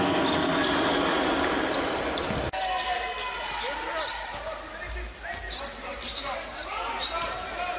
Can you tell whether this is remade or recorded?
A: recorded